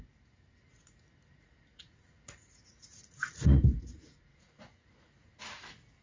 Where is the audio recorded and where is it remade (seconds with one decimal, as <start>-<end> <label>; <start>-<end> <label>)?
0.0-1.7 recorded; 1.7-5.3 remade; 5.3-6.0 recorded